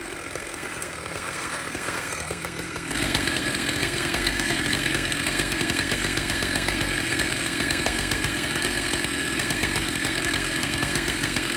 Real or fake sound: fake